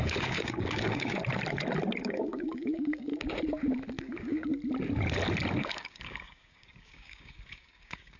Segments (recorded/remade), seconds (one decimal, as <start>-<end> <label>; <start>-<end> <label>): 0.0-1.2 remade; 1.2-2.0 recorded; 2.0-3.1 remade; 3.1-4.0 recorded; 4.0-4.5 remade; 4.5-5.6 recorded; 5.6-8.2 remade

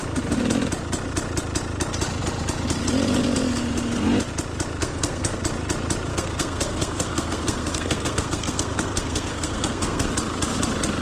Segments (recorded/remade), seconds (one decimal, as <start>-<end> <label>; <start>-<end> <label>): 0.0-4.8 recorded; 4.8-5.4 remade; 5.4-6.1 recorded; 6.1-10.1 remade; 10.1-11.0 recorded

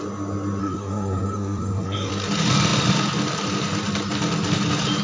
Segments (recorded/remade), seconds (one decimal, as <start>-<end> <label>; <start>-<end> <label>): 0.0-0.6 recorded; 0.6-2.1 remade; 2.1-5.0 recorded

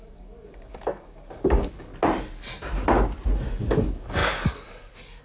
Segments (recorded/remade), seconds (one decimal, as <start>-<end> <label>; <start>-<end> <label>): 0.0-1.9 remade; 1.9-3.6 recorded; 3.6-5.2 remade

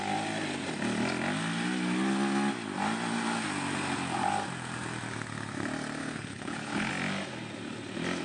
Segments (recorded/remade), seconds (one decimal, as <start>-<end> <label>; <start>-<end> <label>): 0.0-6.0 recorded; 6.0-6.9 remade; 6.9-8.2 recorded

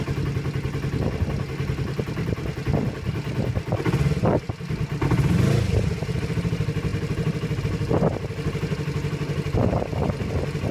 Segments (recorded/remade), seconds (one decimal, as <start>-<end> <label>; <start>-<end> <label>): 0.0-10.7 recorded